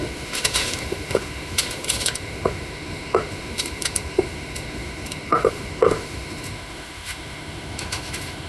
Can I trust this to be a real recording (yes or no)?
no